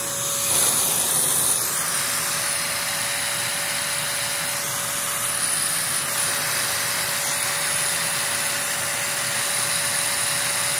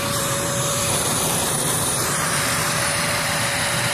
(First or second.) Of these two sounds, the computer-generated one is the second